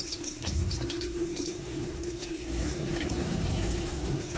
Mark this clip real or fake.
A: fake